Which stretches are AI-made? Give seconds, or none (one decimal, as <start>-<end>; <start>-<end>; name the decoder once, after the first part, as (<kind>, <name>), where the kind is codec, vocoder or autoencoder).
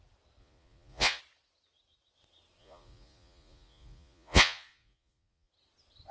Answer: 0.4-1.2 (vocoder, Vocos); 2.6-5.5